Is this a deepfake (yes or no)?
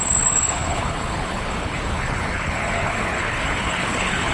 yes